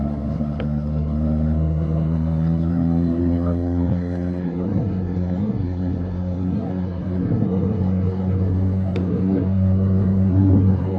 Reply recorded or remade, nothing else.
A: remade